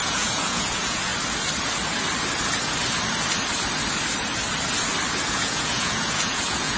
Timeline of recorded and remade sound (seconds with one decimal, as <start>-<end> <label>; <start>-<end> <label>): 0.0-1.1 remade; 1.1-5.2 recorded; 5.2-6.8 remade